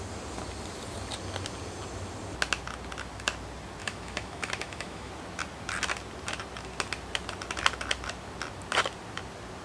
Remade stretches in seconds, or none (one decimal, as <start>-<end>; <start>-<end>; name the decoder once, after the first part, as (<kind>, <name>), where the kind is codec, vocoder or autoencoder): 3.8-5.1 (autoencoder, DAC-VAE)